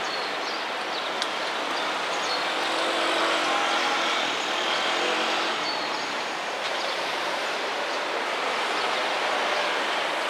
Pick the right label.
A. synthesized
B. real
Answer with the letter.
B